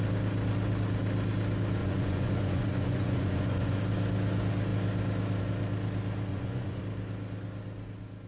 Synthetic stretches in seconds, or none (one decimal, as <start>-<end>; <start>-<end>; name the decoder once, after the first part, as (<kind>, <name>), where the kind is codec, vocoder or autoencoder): 1.8-3.8 (vocoder, Vocos); 6.3-6.8